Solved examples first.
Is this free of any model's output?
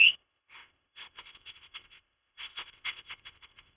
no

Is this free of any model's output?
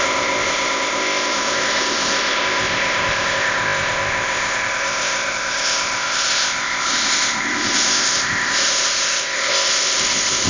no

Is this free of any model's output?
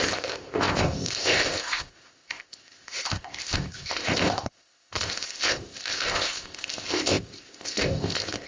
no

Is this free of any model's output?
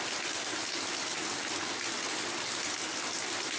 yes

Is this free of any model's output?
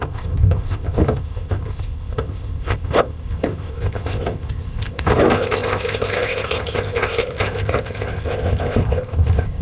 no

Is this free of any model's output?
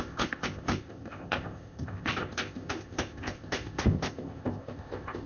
no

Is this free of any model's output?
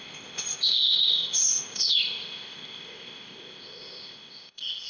no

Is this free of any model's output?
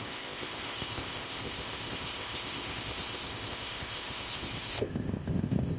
no